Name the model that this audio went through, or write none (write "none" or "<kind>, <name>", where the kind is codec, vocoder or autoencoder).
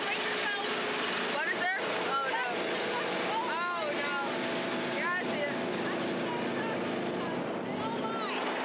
none